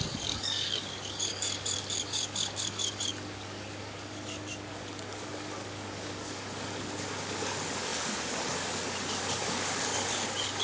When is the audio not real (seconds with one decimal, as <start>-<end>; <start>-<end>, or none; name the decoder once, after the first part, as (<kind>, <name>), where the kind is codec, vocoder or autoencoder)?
0.0-10.6 (codec, DAC)